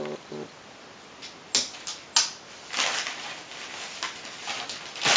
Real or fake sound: real